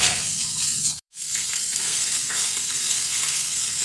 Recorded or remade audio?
remade